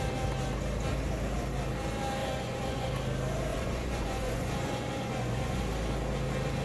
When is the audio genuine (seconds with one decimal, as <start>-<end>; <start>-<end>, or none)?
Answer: 0.0-2.2; 2.9-3.5; 5.6-6.6